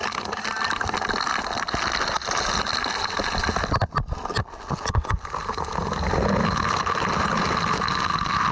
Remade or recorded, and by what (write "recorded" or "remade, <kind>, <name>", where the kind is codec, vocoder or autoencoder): recorded